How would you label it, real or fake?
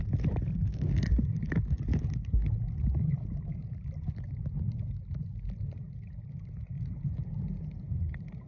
real